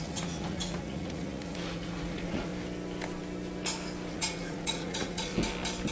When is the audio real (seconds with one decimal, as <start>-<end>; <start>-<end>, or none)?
2.5-4.1; 5.3-5.9